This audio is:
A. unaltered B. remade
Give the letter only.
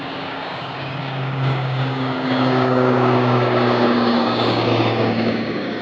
B